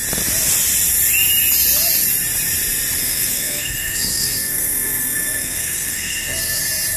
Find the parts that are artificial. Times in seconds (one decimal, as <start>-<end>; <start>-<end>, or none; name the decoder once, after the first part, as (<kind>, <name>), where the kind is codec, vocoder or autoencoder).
3.0-6.6 (codec, SNAC)